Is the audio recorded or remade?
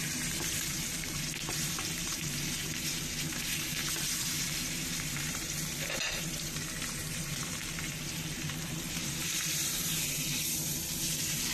remade